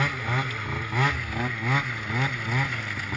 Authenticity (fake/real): real